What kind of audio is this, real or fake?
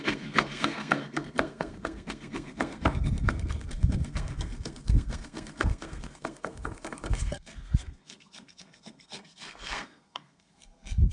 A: fake